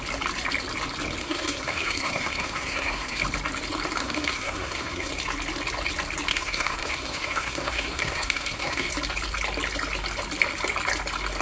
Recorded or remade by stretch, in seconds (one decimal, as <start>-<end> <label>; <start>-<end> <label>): 0.0-1.2 recorded; 1.2-3.2 remade; 3.2-4.0 recorded; 4.0-5.1 remade; 5.1-6.3 recorded; 6.3-8.9 remade; 8.9-11.4 recorded